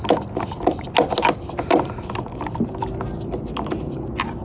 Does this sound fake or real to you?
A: real